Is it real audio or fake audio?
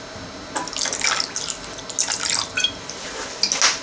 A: real